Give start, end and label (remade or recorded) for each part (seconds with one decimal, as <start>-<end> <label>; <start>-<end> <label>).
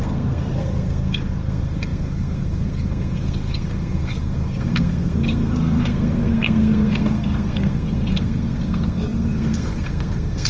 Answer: 0.0-10.5 remade